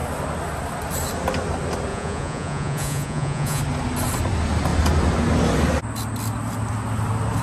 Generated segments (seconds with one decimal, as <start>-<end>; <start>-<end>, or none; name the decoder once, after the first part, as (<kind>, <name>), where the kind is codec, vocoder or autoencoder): 1.9-3.6 (vocoder, Vocos)